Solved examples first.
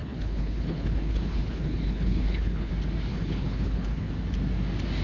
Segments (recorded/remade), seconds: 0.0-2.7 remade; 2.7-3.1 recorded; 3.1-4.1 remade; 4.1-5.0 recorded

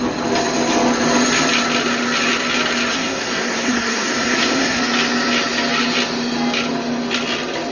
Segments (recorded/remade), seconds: 0.0-2.9 recorded; 2.9-4.8 remade; 4.8-7.7 recorded

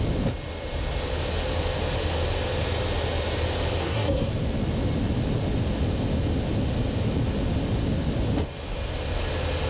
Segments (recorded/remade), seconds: 0.0-3.8 recorded; 3.8-4.3 remade; 4.3-9.7 recorded

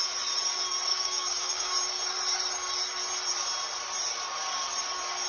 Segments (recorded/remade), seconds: 0.0-0.9 recorded; 0.9-1.7 remade; 1.7-5.3 recorded